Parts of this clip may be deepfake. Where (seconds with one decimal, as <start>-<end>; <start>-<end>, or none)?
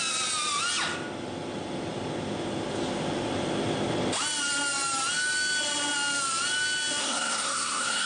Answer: 7.0-8.1